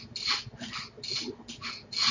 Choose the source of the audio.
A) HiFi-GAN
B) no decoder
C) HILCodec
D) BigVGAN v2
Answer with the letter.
B